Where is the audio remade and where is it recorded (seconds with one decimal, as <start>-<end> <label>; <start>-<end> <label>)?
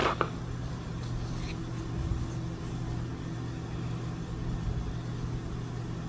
0.0-6.1 recorded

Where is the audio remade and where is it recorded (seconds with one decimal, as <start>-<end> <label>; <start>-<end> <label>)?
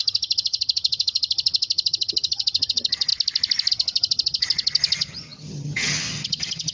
0.0-3.1 remade; 3.1-3.7 recorded; 3.7-6.7 remade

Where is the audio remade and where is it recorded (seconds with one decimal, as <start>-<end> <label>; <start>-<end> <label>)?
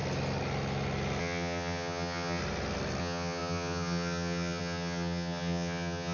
0.0-1.2 recorded; 1.2-2.4 remade; 2.4-3.0 recorded; 3.0-6.1 remade